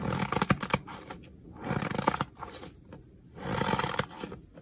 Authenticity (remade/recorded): recorded